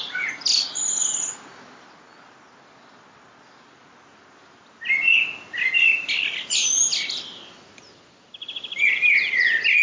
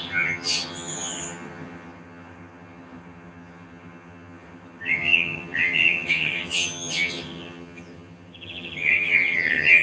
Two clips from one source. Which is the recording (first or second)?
first